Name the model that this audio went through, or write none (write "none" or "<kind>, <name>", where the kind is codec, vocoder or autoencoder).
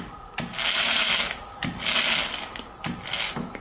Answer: none